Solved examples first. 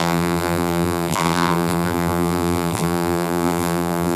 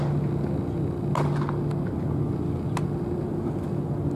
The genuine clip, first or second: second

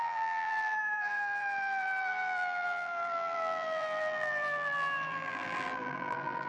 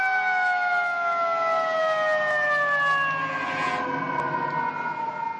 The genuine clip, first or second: second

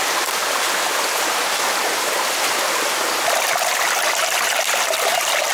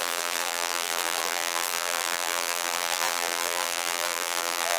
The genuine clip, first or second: first